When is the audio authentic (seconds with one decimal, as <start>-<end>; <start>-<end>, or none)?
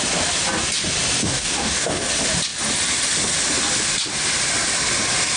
0.0-1.2; 2.1-5.4